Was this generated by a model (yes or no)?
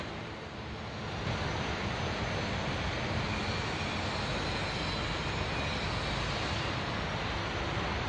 no